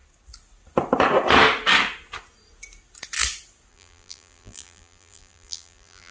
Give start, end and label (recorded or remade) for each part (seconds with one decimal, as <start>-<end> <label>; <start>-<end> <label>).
0.0-3.7 recorded; 3.7-6.1 remade